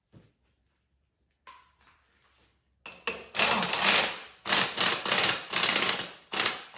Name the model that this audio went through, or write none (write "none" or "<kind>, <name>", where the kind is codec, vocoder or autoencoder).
none